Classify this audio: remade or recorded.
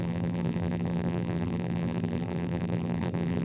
remade